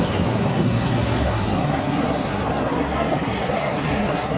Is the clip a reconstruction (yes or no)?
yes